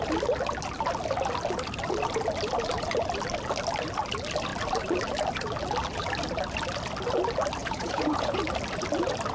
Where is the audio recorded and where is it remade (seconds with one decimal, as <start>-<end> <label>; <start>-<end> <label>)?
0.0-7.6 recorded; 7.6-8.4 remade; 8.4-9.3 recorded